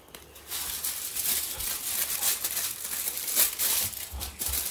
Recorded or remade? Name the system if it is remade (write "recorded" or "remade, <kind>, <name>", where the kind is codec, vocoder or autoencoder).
recorded